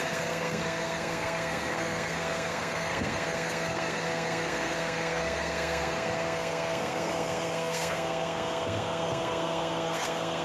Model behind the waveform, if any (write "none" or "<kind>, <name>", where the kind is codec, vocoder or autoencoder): codec, SNAC